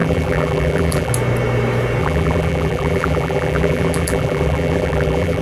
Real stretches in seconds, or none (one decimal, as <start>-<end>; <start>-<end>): 1.1-2.0